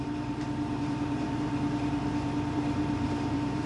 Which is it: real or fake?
fake